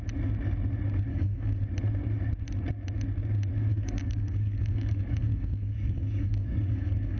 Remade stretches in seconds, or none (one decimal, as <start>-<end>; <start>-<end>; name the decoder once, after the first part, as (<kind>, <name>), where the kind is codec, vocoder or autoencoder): 1.1-1.6 (codec, DAC); 3.7-7.2